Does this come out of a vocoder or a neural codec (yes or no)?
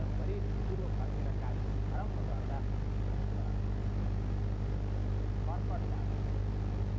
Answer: no